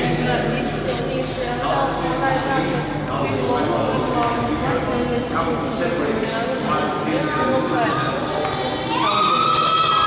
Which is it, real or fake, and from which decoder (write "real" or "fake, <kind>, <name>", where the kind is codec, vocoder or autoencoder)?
real